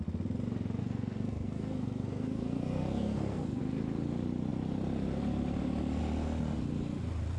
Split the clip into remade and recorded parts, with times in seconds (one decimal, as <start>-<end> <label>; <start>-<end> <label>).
0.0-0.8 recorded; 0.8-3.6 remade; 3.6-7.4 recorded